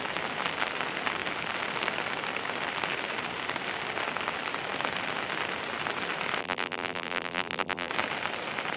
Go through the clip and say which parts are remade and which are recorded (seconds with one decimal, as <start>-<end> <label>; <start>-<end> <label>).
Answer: 0.0-6.4 recorded; 6.4-7.9 remade; 7.9-8.8 recorded